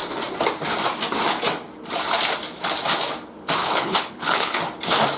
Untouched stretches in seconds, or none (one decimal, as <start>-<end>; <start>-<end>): 0.0-3.6; 4.6-5.2